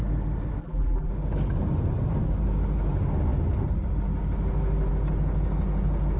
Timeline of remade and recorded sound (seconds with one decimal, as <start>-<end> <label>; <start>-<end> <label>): 0.0-0.6 recorded; 0.6-1.1 remade; 1.1-6.2 recorded